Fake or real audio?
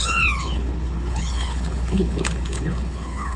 fake